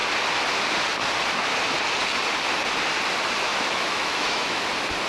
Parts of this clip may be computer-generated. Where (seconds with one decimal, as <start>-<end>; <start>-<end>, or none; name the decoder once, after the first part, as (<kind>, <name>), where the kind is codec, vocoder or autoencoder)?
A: 3.5-4.6 (autoencoder, DAC-VAE)